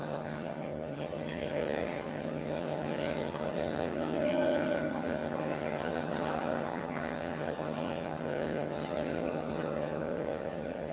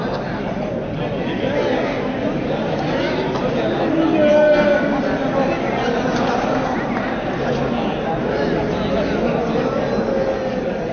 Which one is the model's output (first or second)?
first